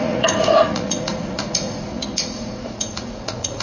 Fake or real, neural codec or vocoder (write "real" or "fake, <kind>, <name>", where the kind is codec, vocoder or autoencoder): fake, vocoder, Vocos